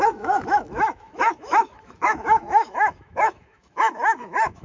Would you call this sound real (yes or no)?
no